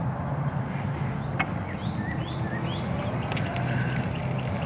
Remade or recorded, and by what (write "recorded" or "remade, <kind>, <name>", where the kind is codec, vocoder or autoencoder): recorded